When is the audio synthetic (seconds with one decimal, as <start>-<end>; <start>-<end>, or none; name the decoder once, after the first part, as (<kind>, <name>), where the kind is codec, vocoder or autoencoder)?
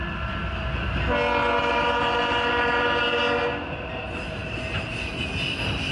1.6-3.2 (vocoder, BigVGAN v2)